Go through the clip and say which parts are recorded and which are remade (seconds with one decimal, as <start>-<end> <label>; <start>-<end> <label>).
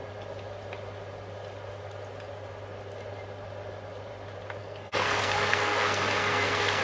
0.0-4.6 recorded; 4.6-6.8 remade